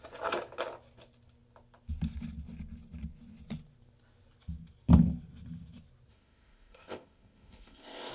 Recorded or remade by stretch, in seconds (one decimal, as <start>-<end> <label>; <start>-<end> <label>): 0.0-6.1 recorded; 6.1-8.1 remade